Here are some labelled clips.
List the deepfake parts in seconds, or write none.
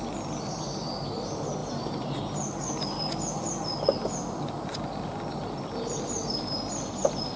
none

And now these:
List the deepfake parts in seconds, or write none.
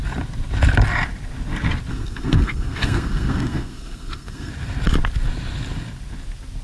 1.9-4.5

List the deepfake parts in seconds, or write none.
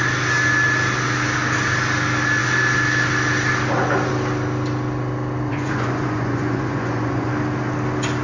5.5-7.3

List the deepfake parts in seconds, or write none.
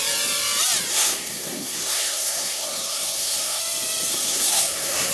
0.9-3.6; 4.1-5.1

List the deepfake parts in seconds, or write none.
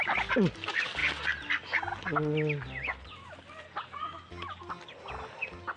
none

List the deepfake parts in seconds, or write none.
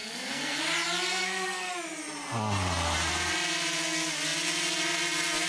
0.0-0.6; 1.1-1.7